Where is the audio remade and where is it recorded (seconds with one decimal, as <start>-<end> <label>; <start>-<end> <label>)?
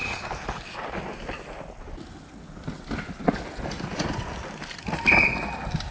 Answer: 0.0-5.9 recorded